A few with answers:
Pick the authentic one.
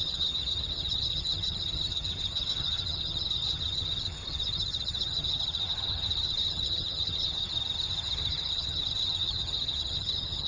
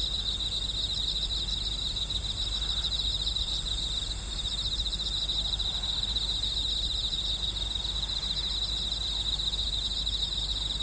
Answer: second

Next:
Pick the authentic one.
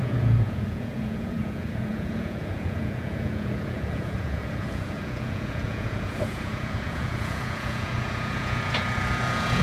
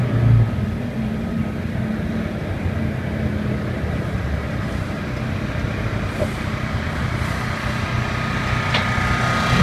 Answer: second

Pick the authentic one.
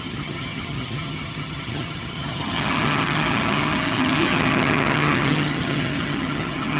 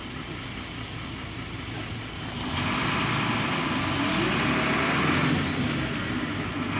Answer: second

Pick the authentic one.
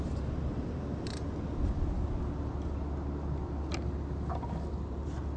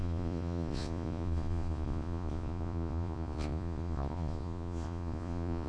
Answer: first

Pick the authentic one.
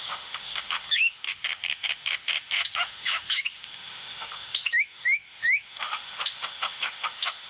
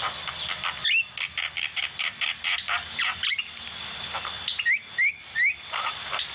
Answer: second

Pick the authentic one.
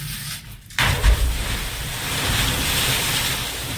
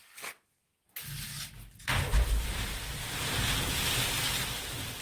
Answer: second